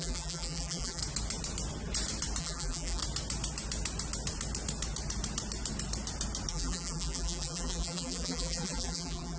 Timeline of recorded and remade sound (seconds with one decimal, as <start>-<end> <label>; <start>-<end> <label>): 0.0-1.0 remade; 1.0-2.4 recorded; 2.4-3.0 remade; 3.0-6.5 recorded; 6.5-9.4 remade